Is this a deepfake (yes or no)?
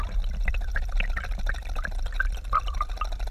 no